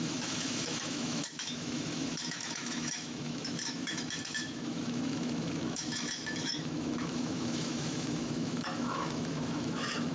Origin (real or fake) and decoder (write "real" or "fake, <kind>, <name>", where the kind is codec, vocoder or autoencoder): fake, autoencoder, DAC-VAE